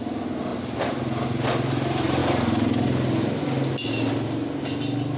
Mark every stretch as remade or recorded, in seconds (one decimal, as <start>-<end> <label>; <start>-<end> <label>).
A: 0.0-0.5 recorded; 0.5-1.5 remade; 1.5-5.2 recorded